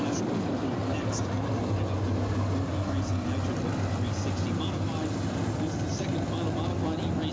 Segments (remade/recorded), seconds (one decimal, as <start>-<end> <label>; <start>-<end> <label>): 0.0-7.3 recorded